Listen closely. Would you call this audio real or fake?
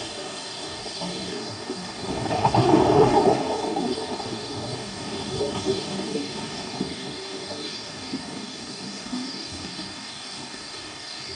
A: fake